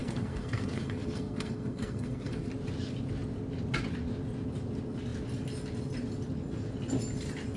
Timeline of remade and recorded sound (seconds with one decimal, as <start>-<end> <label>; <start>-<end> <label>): 0.0-2.5 remade; 2.5-7.6 recorded